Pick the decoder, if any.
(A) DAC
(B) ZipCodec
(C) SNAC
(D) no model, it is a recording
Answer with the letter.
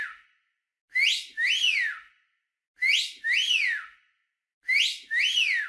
D